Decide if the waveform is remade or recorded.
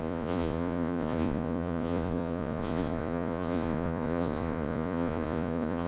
remade